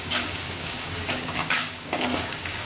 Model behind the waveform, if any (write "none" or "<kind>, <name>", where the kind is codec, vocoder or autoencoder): codec, DAC